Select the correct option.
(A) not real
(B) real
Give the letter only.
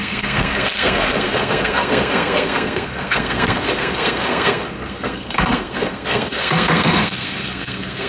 A